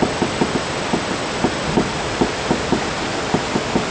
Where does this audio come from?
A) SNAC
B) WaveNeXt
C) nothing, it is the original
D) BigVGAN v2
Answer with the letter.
C